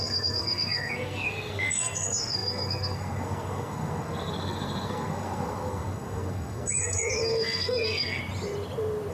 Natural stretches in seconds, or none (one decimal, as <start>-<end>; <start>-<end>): 8.2-9.1